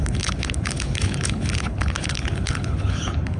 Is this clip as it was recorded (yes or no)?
no